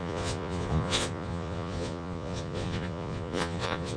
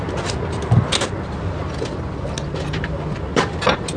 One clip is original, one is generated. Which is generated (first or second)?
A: first